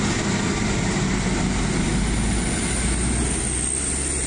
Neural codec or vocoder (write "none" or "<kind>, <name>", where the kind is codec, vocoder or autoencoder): none